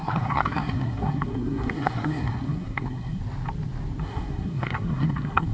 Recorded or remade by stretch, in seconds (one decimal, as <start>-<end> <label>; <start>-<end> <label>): 0.0-3.2 remade; 3.2-4.0 recorded; 4.0-5.5 remade